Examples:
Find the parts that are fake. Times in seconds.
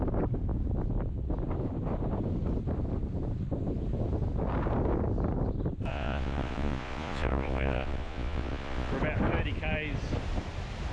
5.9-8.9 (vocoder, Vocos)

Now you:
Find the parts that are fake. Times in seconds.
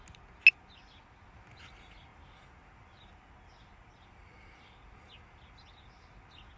none